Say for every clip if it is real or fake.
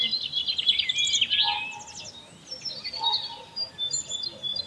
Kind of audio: real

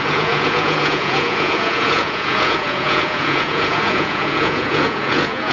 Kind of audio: fake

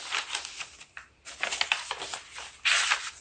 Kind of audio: real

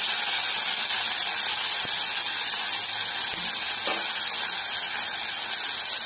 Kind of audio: real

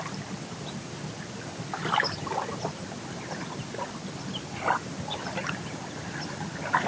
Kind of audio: real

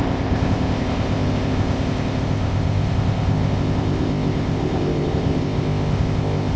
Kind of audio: fake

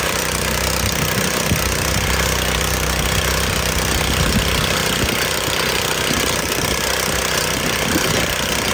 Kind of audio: real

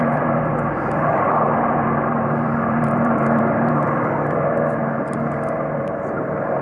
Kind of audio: fake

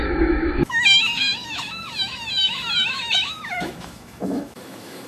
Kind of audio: fake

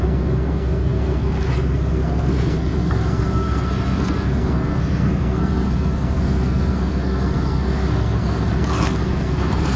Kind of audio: fake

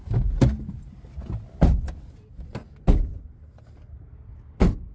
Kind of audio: real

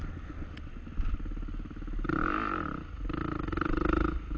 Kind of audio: real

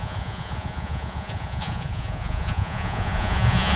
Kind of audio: fake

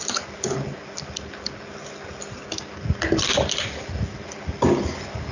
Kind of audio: real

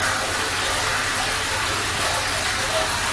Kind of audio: real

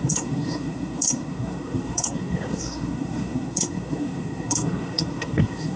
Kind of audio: fake